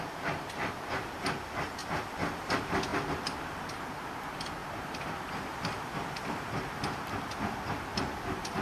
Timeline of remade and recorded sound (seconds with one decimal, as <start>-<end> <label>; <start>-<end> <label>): 0.0-2.9 recorded; 2.9-3.4 remade; 3.4-8.6 recorded